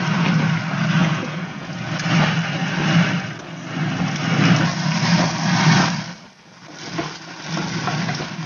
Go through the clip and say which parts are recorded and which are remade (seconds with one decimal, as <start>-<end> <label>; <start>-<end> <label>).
0.0-1.0 recorded; 1.0-1.8 remade; 1.8-8.5 recorded